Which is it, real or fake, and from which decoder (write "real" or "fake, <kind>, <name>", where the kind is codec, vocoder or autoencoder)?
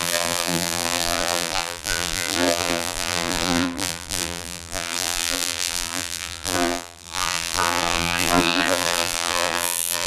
fake, vocoder, BigVGAN v2